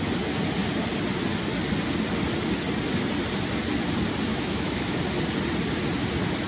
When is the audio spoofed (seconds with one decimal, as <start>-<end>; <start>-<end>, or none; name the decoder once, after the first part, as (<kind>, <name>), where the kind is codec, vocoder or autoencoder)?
4.3-5.0 (autoencoder, DAC-VAE)